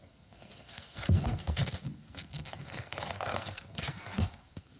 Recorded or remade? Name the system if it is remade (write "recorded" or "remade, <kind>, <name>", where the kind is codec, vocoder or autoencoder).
remade, codec, SNAC